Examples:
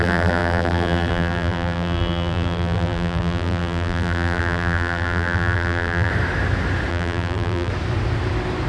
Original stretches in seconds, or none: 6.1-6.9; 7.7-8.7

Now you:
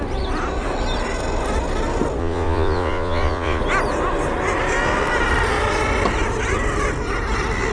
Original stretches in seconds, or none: 0.0-2.2; 3.6-7.7

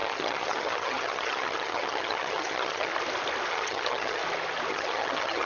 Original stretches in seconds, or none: 2.9-3.5; 4.2-4.7

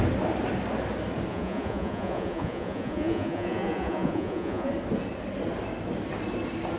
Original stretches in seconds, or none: 0.0-1.3; 4.7-6.8

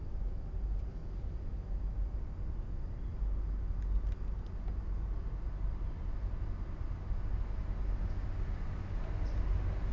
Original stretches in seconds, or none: 0.0-9.9

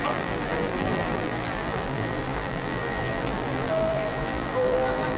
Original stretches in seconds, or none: none

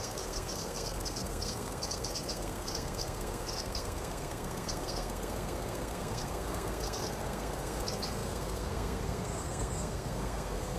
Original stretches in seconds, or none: none

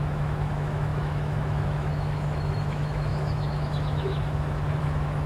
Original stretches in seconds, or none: none